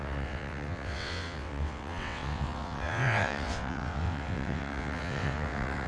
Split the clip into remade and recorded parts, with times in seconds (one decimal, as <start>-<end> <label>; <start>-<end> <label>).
0.0-5.9 remade